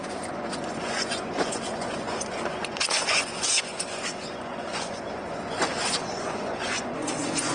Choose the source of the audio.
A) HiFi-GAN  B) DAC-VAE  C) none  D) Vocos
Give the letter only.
D